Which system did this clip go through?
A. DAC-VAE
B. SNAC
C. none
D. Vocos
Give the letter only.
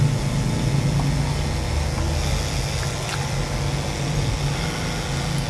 C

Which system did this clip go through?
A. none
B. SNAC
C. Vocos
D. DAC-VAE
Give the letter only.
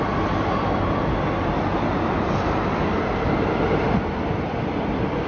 A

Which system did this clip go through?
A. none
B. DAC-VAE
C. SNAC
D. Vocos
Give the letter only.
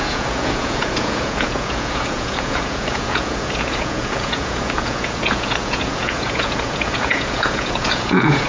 D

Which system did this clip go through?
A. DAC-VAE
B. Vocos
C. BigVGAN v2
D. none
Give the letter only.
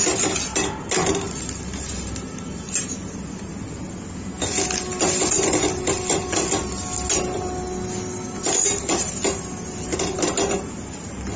D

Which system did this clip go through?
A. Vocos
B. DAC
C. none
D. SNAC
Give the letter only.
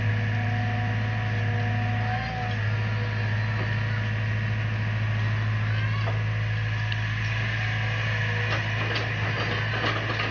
C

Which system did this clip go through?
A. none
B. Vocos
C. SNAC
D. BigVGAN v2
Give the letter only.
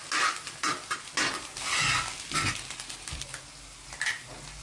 A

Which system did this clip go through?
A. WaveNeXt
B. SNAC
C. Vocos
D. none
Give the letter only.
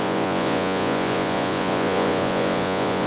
C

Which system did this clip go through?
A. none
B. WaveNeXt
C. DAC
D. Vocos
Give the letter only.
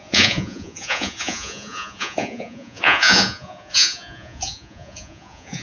D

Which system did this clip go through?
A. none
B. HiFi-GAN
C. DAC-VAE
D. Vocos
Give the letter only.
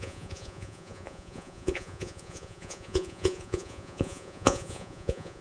D